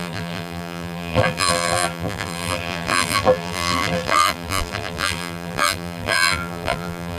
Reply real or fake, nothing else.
fake